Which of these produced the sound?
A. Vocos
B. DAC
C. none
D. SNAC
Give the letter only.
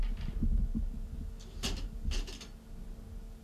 C